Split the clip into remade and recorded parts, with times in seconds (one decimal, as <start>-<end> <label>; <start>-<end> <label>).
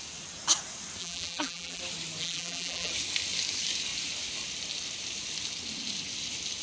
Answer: 0.0-1.0 recorded; 1.0-1.8 remade; 1.8-2.2 recorded; 2.2-2.9 remade; 2.9-6.6 recorded